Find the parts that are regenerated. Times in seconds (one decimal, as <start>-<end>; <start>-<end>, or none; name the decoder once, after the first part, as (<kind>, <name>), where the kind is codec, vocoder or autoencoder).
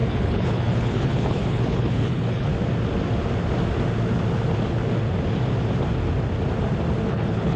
0.0-2.5 (codec, HILCodec); 7.1-7.6